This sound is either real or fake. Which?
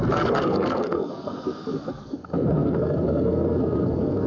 fake